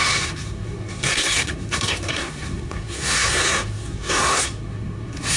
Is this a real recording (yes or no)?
no